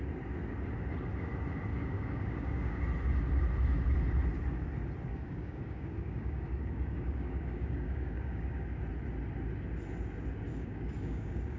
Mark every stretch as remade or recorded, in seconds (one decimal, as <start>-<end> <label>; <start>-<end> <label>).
0.0-1.7 recorded; 1.7-2.8 remade; 2.8-5.1 recorded; 5.1-8.8 remade; 8.8-10.5 recorded; 10.5-11.6 remade